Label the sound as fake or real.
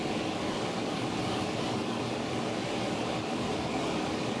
fake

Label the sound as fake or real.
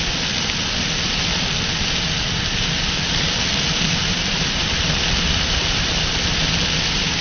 real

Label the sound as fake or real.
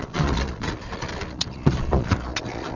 fake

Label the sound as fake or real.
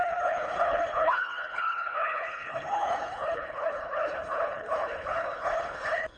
fake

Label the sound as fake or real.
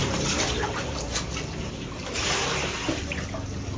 real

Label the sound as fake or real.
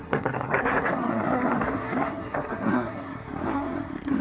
fake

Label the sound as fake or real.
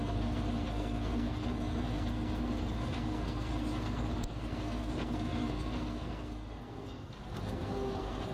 fake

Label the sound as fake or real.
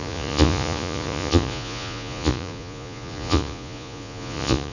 fake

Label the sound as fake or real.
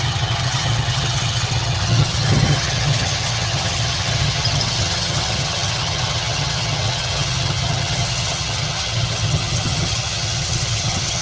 fake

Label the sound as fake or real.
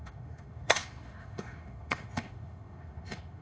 fake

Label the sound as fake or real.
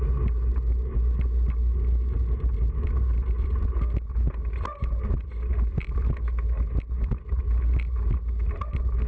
real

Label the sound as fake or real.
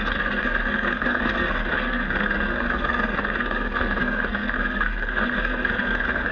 fake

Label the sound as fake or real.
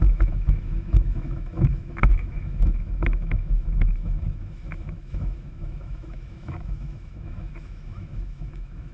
fake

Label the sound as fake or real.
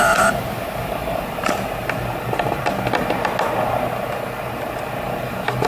real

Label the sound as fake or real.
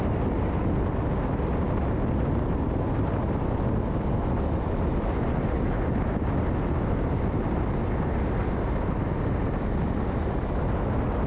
real